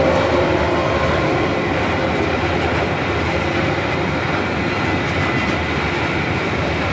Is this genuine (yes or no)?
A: yes